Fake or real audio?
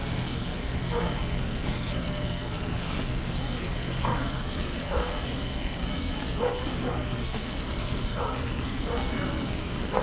fake